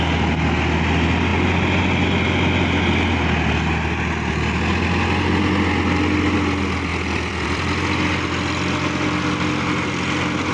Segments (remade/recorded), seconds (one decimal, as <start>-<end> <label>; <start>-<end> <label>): 0.0-6.9 recorded; 6.9-7.7 remade; 7.7-10.5 recorded

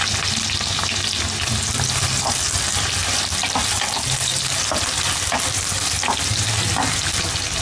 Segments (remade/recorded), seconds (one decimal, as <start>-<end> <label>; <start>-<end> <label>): 0.0-7.6 recorded

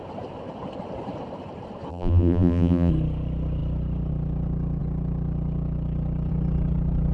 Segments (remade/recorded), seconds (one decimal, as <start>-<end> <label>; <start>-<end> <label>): 0.0-1.9 recorded; 1.9-2.9 remade; 2.9-7.1 recorded

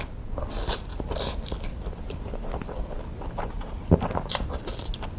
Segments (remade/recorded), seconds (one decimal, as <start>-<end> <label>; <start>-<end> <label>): 0.0-3.6 recorded; 3.6-4.5 remade; 4.5-5.2 recorded

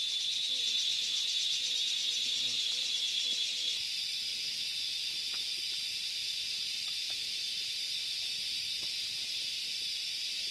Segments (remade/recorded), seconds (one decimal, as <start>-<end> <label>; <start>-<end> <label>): 0.0-1.1 remade; 1.1-1.9 recorded; 1.9-4.3 remade; 4.3-4.9 recorded; 4.9-8.0 remade; 8.0-9.0 recorded; 9.0-10.5 remade

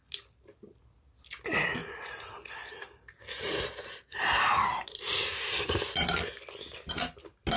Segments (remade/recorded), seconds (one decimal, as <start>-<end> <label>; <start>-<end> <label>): 0.0-0.8 remade; 0.8-1.8 recorded; 1.8-5.8 remade; 5.8-7.6 recorded

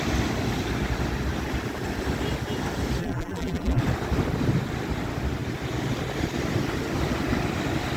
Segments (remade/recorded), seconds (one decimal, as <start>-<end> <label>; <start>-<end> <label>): 0.0-3.0 recorded; 3.0-3.8 remade; 3.8-8.0 recorded